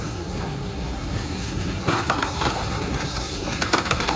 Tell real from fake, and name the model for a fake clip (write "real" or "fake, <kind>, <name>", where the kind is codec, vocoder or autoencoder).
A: fake, codec, SNAC